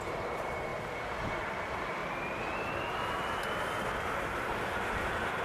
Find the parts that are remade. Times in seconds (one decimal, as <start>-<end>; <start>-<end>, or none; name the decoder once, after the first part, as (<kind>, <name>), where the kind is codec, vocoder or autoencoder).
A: none